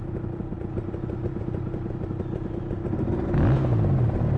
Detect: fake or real real